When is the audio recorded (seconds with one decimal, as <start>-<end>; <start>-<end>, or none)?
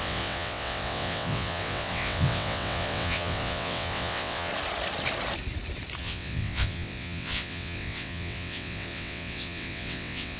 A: 4.5-6.0